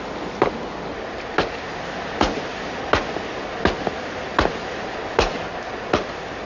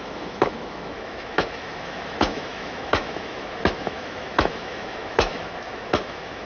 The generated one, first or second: second